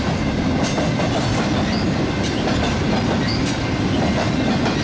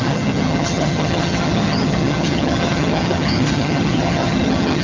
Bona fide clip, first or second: first